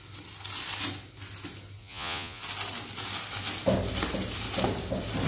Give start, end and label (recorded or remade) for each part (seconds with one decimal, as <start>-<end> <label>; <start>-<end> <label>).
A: 0.0-1.8 recorded; 1.8-2.4 remade; 2.4-5.3 recorded